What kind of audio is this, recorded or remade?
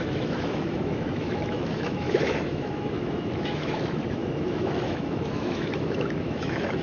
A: remade